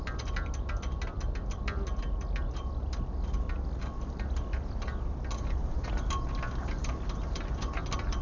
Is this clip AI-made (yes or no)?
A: no